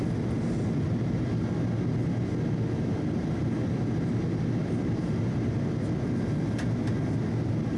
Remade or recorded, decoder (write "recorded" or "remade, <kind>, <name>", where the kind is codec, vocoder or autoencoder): recorded